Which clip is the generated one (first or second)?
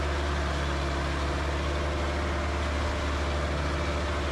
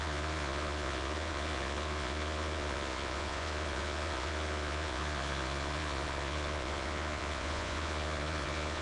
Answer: second